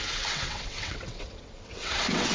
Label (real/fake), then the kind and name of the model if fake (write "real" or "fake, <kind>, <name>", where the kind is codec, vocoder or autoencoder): fake, vocoder, WaveNeXt